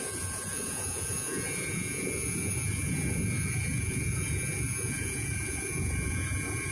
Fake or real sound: fake